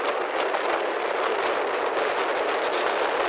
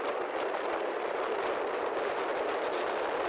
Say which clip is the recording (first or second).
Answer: first